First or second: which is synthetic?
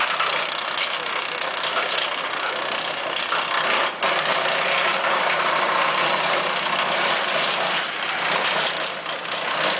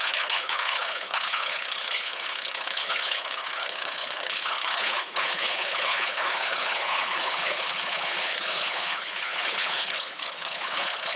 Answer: second